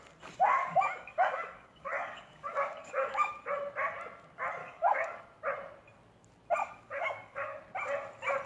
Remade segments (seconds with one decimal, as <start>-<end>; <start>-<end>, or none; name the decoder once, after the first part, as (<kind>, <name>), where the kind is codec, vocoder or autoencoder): 0.6-3.3 (codec, DAC); 4.6-5.2; 6.6-7.6